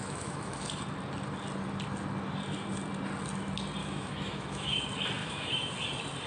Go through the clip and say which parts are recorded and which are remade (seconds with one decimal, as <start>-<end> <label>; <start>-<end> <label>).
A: 0.0-0.7 remade; 0.7-3.8 recorded; 3.8-4.8 remade; 4.8-5.2 recorded; 5.2-5.7 remade; 5.7-6.3 recorded